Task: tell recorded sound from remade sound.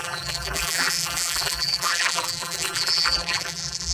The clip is remade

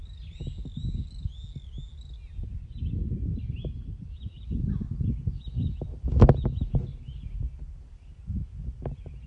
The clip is recorded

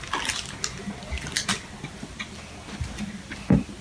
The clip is recorded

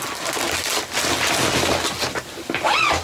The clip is recorded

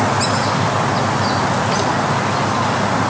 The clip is recorded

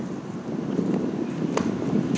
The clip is recorded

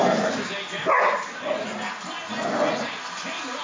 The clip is recorded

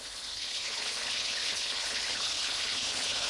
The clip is remade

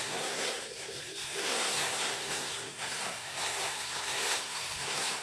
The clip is remade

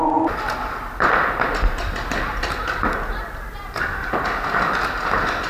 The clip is recorded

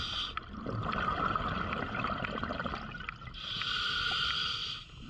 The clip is recorded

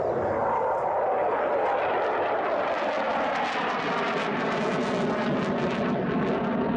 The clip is recorded